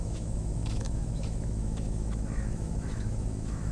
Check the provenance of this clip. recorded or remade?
remade